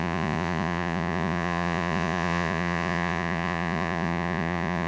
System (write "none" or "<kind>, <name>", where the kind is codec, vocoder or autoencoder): vocoder, Vocos